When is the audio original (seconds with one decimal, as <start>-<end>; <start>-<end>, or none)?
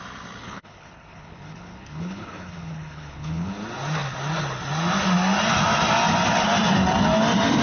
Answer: 0.0-0.4; 3.5-7.6